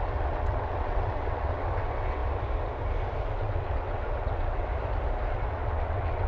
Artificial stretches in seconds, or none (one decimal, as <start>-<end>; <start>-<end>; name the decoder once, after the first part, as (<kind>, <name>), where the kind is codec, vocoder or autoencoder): 0.0-2.2 (vocoder, WaveNeXt); 3.2-4.7; 5.3-6.3